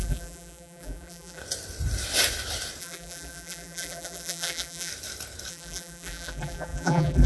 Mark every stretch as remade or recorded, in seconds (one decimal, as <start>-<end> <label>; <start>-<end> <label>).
0.0-1.4 remade; 1.4-2.8 recorded; 2.8-4.9 remade; 4.9-5.5 recorded; 5.5-7.3 remade